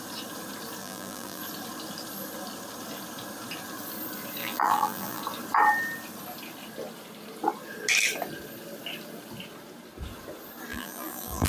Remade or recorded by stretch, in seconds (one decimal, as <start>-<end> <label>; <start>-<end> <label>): 0.0-0.8 recorded; 0.8-1.4 remade; 1.4-4.4 recorded; 4.4-5.2 remade; 5.2-10.7 recorded; 10.7-11.5 remade

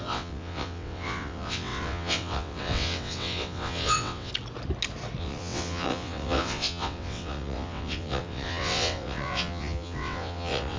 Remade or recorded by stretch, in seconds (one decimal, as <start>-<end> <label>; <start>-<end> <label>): 0.0-4.3 remade; 4.3-5.2 recorded; 5.2-10.8 remade

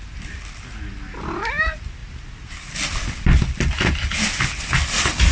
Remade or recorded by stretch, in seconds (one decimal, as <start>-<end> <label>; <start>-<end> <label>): 0.0-5.3 recorded

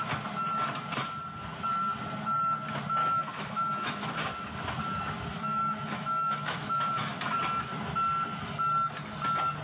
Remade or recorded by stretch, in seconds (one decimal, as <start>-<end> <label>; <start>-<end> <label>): 0.0-3.0 recorded; 3.0-4.1 remade; 4.1-5.3 recorded; 5.3-7.1 remade; 7.1-9.6 recorded

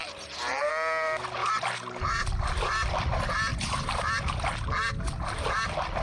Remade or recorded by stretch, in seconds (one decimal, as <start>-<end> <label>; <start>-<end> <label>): 0.0-0.7 remade; 0.7-1.4 recorded; 1.4-2.6 remade; 2.6-3.5 recorded; 3.5-4.3 remade; 4.3-6.0 recorded

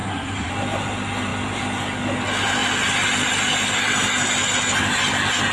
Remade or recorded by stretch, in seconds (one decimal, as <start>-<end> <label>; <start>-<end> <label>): 0.0-0.5 remade; 0.5-5.5 recorded

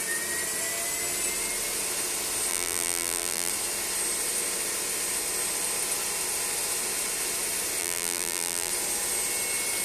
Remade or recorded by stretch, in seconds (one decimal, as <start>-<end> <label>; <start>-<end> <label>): 0.0-2.5 recorded; 2.5-3.5 remade; 3.5-7.8 recorded; 7.8-8.7 remade; 8.7-9.8 recorded